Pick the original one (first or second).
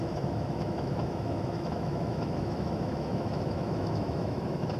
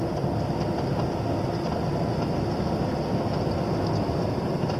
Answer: second